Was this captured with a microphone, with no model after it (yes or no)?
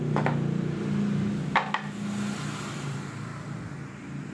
yes